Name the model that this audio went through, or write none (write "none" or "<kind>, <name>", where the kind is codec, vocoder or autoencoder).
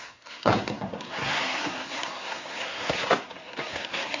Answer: codec, SNAC